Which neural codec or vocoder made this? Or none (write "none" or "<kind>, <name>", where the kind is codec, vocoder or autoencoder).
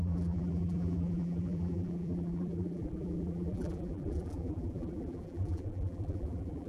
vocoder, BigVGAN v2